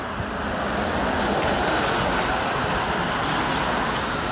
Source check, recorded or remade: recorded